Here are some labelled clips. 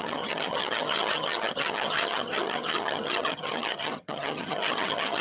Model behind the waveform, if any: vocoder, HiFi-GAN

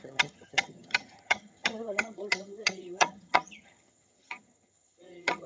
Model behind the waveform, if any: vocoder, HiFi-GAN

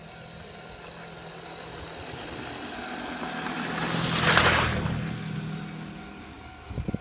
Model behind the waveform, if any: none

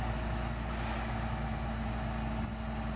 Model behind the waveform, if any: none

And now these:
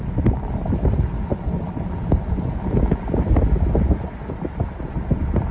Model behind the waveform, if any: none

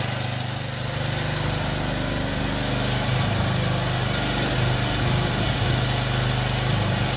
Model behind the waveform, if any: none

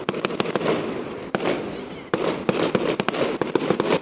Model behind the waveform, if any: none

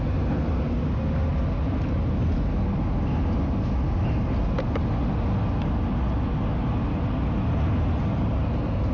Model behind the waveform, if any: none